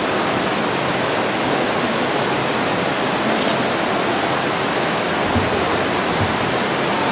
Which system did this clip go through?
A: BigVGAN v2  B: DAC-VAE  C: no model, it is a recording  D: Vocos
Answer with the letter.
C